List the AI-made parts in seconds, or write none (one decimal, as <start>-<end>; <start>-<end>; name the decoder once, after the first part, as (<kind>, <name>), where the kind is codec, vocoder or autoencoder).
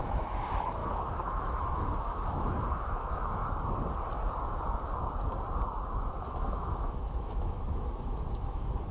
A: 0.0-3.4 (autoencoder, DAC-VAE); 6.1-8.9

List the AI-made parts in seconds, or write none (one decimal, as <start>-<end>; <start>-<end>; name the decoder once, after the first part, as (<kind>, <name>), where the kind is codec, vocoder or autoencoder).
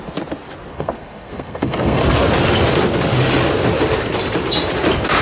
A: 0.7-2.0 (codec, SNAC)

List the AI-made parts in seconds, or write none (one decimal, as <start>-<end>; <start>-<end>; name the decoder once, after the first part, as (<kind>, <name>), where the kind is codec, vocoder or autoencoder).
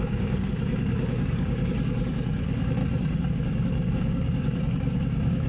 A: 0.0-2.8 (codec, DAC); 3.3-5.5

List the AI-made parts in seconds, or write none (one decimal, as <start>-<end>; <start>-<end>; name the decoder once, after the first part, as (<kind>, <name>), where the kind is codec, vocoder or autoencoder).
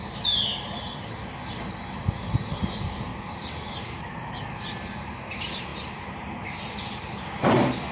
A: 0.5-1.1 (vocoder, BigVGAN v2); 3.1-4.4